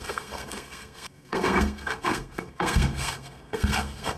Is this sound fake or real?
fake